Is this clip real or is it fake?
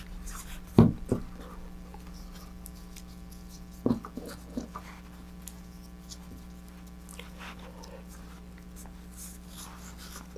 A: real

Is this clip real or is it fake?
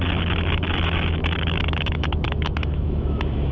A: fake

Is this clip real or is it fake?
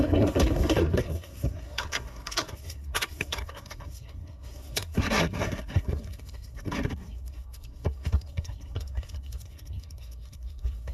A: fake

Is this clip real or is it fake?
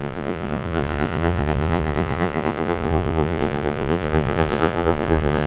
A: fake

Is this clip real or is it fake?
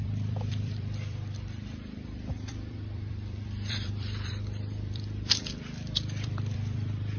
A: fake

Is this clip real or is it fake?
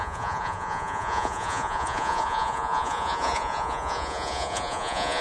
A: fake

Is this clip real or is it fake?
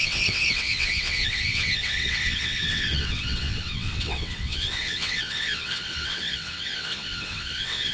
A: fake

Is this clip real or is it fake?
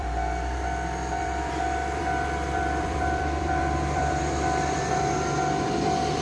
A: fake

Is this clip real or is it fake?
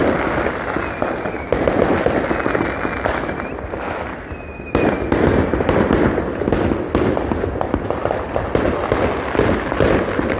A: real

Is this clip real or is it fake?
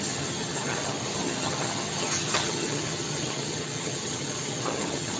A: fake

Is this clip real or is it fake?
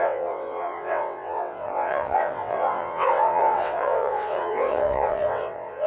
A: fake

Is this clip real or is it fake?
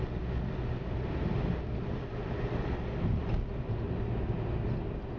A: real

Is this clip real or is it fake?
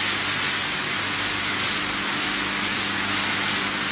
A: real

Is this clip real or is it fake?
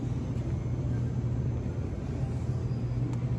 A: real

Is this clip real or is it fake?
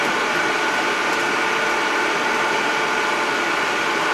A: real